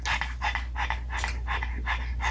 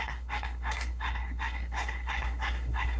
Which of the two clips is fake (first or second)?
second